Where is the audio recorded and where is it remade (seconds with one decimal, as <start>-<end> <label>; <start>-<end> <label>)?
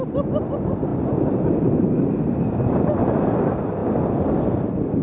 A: 0.0-5.0 recorded